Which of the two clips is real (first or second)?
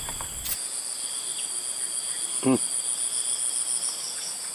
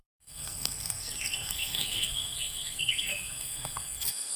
first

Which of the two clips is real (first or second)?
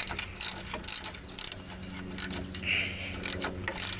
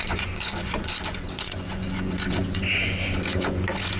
first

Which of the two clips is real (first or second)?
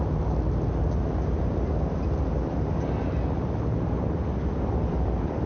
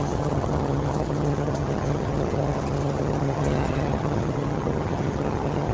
first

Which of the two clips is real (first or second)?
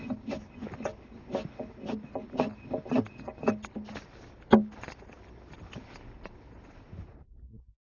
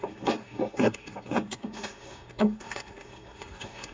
first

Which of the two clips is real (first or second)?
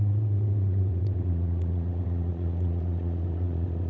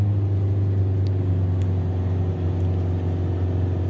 second